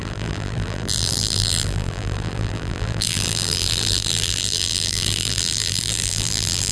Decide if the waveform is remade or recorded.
remade